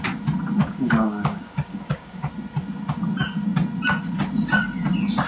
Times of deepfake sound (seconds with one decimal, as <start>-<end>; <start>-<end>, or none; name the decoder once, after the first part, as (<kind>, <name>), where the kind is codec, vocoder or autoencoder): 0.6-2.3 (codec, DAC)

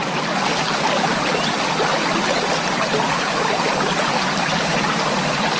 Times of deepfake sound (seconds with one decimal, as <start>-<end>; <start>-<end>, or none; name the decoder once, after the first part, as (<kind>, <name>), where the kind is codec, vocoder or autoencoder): none

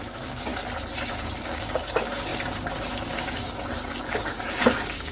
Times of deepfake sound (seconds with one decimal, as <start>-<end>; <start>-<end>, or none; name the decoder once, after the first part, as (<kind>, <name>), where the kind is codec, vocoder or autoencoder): 0.0-0.5 (codec, DAC); 1.1-5.1

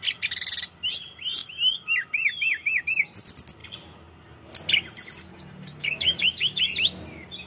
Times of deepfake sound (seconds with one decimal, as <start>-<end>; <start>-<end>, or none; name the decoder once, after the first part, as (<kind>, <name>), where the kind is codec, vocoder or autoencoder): 5.3-6.6 (codec, DAC)

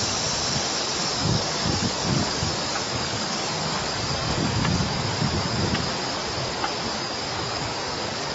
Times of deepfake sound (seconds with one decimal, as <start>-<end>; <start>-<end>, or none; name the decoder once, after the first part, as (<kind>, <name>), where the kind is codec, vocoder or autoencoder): 1.0-5.6 (codec, DAC); 6.9-8.3

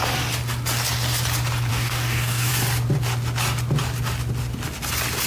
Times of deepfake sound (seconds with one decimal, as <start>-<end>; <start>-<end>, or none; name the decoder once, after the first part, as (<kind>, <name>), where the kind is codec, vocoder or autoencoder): 1.7-2.5 (codec, DAC)

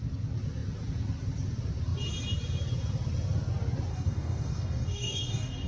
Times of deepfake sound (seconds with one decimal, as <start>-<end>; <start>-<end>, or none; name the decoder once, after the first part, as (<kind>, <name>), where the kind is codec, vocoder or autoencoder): 3.9-5.7 (codec, DAC)